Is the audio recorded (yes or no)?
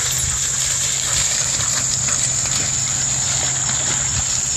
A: yes